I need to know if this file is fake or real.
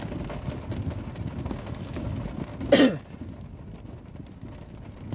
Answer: real